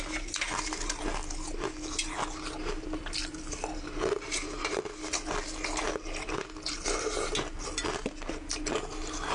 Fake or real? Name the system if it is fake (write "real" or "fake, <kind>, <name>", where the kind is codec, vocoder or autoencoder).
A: real